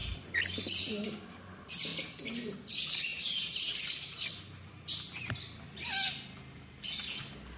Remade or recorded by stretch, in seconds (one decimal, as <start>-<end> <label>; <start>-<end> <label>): 0.0-0.8 remade; 0.8-3.1 recorded; 3.1-5.4 remade; 5.4-7.6 recorded